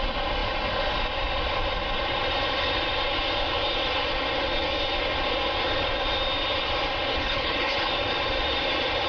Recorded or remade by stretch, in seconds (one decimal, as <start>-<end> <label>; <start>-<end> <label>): 0.0-7.1 recorded; 7.1-7.9 remade; 7.9-9.1 recorded